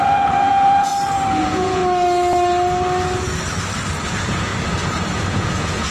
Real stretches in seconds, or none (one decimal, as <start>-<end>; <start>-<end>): 0.9-1.4; 1.8-4.1; 4.5-5.1